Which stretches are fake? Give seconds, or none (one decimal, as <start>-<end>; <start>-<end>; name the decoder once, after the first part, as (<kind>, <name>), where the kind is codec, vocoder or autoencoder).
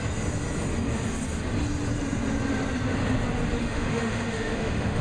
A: 3.6-5.0 (autoencoder, DAC-VAE)